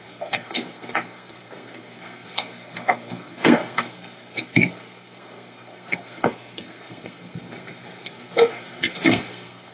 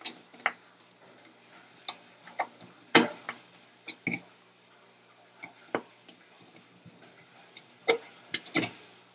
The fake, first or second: first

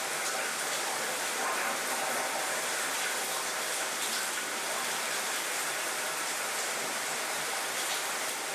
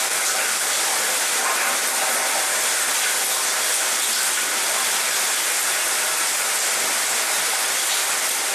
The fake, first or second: first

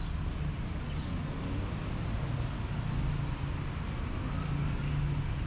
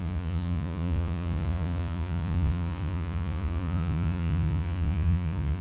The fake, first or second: second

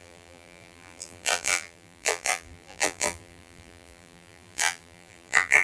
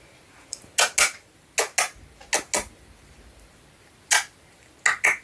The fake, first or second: first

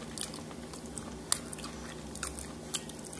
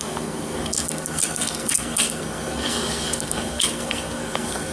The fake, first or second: second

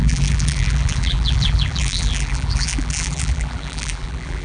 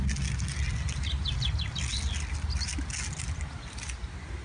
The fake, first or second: first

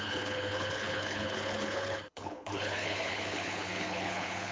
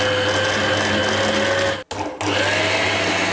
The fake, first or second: first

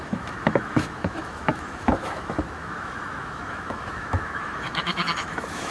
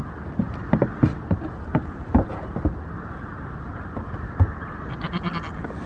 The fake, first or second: first